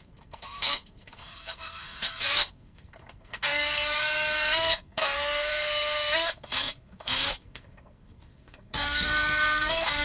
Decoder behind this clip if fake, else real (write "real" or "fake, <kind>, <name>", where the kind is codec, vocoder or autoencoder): fake, codec, SNAC